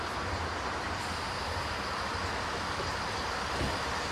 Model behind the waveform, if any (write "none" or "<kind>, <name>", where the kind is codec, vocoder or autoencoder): none